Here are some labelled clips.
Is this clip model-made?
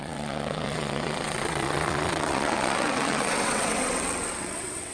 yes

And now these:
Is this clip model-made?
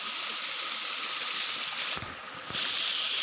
no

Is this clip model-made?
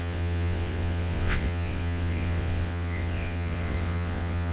yes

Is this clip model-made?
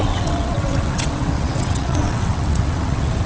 yes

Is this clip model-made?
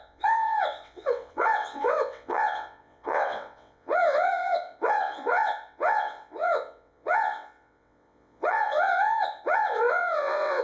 yes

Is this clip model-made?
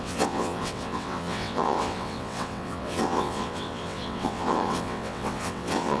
yes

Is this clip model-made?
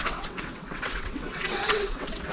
yes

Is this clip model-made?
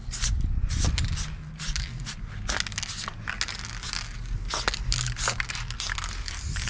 no